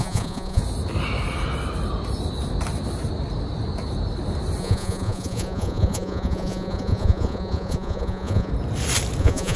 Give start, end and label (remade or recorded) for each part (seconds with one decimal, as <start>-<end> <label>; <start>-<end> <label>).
0.0-0.6 remade; 0.6-4.6 recorded; 4.6-8.5 remade; 8.5-9.2 recorded; 9.2-9.6 remade

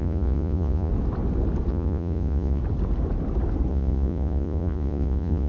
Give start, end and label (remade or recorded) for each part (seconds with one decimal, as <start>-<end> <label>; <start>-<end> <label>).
0.0-0.9 remade; 0.9-1.7 recorded; 1.7-2.6 remade; 2.6-3.7 recorded; 3.7-5.5 remade